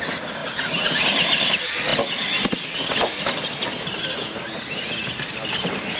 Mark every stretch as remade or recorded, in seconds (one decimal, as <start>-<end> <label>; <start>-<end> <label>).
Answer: 0.0-6.0 recorded

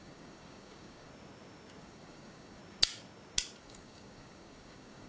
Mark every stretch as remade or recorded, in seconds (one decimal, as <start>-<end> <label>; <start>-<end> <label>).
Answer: 0.0-1.1 remade; 1.1-1.8 recorded; 1.8-2.6 remade; 2.6-3.6 recorded; 3.6-5.1 remade